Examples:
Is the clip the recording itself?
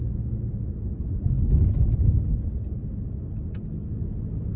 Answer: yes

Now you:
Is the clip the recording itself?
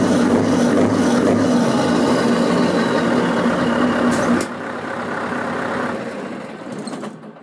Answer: yes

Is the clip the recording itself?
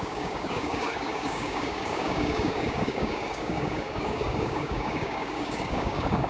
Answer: no